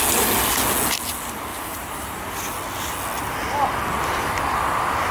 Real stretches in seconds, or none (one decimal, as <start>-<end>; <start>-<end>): 0.0-1.5; 2.2-5.1